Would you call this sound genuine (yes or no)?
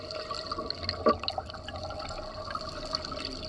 yes